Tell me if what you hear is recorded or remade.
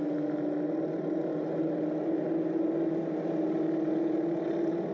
recorded